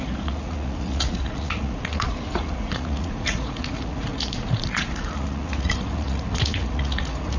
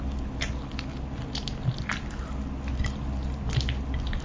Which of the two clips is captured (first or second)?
second